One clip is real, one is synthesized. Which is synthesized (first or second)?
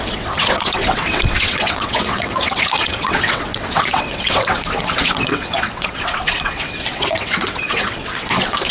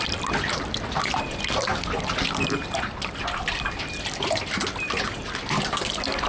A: first